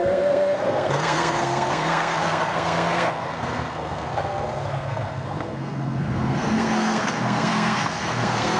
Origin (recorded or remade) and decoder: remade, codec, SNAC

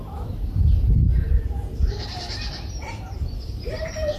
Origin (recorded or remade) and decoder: remade, vocoder, BigVGAN v2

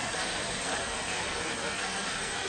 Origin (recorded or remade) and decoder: remade, codec, SNAC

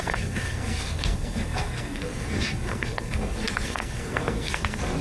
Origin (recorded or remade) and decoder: remade, codec, SNAC